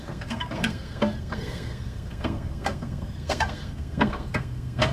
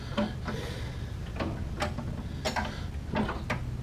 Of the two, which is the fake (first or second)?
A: first